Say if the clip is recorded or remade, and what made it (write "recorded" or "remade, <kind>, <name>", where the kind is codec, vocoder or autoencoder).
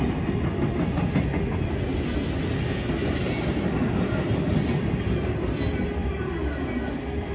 recorded